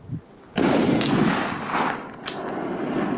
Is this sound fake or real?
real